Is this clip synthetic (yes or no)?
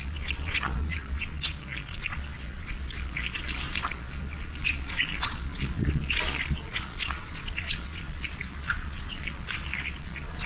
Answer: yes